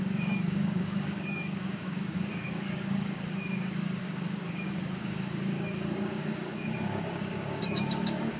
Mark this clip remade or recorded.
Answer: remade